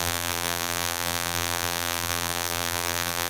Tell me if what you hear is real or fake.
fake